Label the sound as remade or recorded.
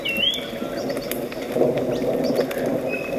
recorded